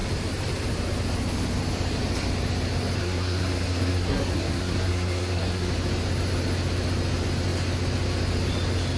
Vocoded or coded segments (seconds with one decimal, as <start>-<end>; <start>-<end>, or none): 3.0-5.7